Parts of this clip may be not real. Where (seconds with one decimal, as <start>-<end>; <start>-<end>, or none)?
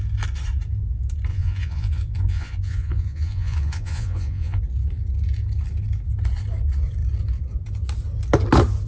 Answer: 1.3-4.6